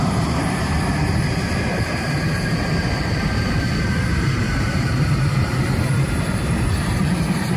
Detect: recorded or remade remade